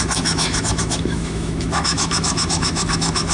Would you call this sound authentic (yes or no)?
no